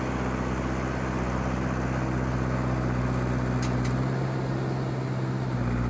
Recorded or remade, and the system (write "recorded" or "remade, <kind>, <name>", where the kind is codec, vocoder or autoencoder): recorded